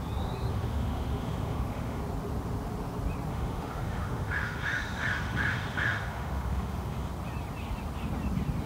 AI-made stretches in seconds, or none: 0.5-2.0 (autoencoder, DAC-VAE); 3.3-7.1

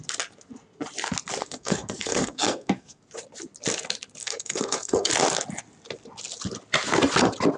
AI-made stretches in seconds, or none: 1.4-3.0 (codec, SNAC); 4.2-5.1

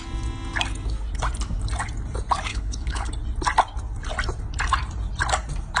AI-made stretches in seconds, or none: 2.5-3.1 (codec, HILCodec)

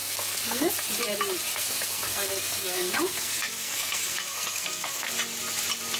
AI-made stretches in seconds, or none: 0.0-0.7 (codec, SNAC); 1.5-5.1

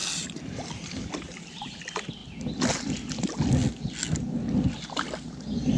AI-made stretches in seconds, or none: 0.0-1.8 (vocoder, BigVGAN v2)